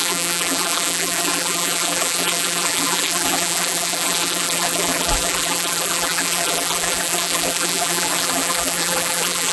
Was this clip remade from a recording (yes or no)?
yes